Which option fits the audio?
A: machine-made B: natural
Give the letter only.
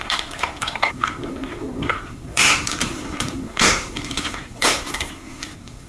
A